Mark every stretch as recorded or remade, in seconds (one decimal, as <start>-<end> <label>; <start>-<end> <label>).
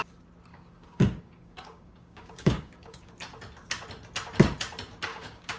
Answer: 0.0-0.5 recorded; 0.5-3.1 remade; 3.1-5.1 recorded; 5.1-5.6 remade